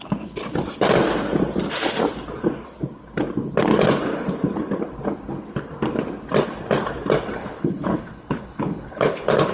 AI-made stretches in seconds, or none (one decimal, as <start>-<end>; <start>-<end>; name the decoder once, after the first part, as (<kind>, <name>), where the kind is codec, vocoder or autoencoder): 7.4-9.5 (codec, HILCodec)